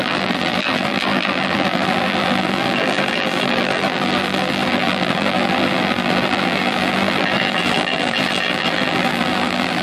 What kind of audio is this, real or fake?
fake